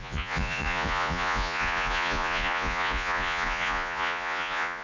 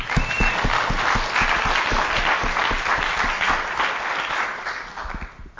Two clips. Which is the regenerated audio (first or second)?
first